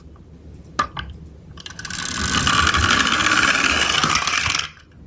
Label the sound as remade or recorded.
recorded